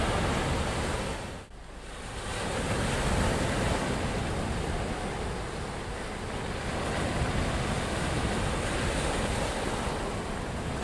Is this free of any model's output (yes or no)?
yes